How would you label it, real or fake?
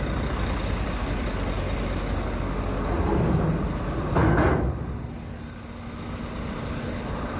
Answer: real